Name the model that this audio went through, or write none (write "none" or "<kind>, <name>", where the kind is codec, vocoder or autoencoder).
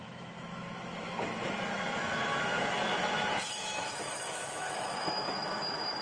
autoencoder, DAC-VAE